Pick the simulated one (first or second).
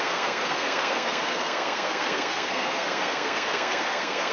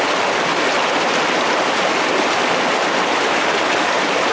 first